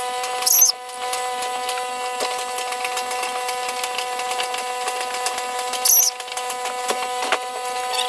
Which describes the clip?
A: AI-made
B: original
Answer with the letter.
B